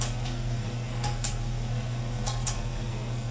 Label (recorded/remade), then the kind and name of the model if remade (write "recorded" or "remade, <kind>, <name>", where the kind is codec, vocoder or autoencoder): remade, codec, SNAC